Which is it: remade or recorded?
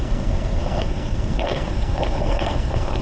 remade